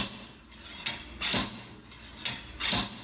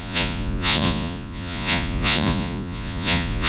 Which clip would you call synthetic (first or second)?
second